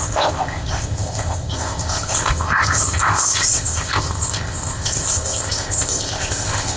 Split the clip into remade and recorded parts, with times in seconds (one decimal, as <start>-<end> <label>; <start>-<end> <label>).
0.0-6.8 remade